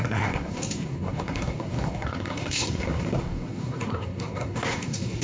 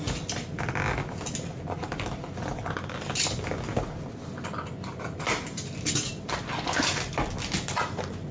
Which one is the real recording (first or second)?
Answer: second